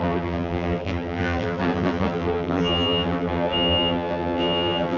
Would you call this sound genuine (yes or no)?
no